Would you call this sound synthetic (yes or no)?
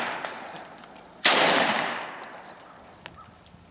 no